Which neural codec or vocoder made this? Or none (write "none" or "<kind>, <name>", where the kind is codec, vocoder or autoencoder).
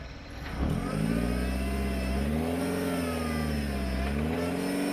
none